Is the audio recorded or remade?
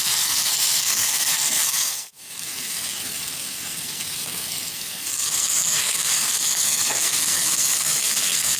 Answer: remade